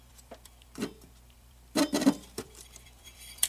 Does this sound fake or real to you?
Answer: fake